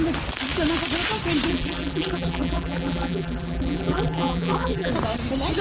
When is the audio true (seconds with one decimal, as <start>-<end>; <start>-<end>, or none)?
0.0-1.5; 4.9-5.6